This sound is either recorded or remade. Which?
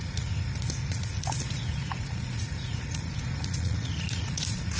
remade